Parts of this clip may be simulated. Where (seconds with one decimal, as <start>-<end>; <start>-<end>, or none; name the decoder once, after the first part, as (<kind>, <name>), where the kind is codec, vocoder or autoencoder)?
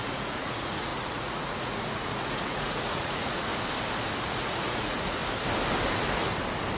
0.0-3.5 (vocoder, Vocos); 4.2-5.2